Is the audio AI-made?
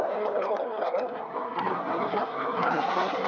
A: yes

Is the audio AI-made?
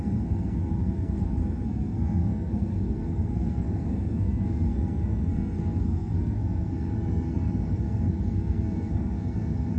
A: yes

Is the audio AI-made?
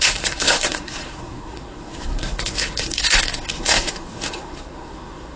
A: yes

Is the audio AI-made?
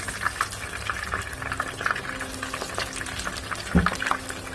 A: no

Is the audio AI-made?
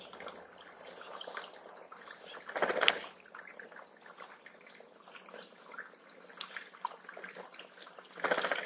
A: no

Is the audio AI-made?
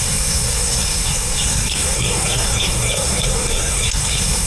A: yes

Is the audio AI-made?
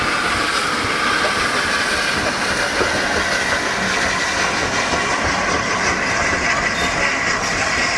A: no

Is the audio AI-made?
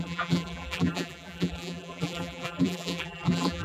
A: yes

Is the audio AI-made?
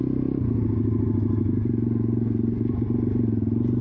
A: no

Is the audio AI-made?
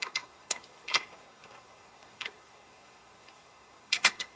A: yes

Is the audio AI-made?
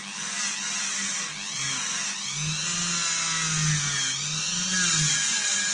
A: no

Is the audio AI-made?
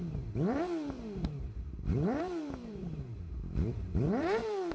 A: yes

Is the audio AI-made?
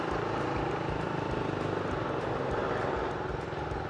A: no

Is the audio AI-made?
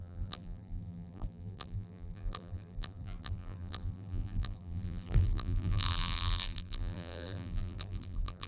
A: yes